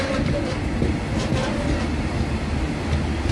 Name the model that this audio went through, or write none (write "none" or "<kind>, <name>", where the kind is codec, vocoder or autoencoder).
none